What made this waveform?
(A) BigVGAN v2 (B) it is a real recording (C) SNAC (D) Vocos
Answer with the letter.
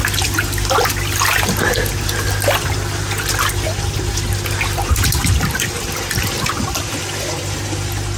B